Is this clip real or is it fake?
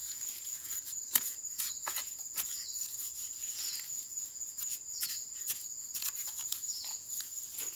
fake